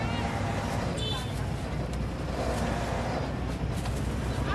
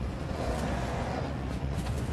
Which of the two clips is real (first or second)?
first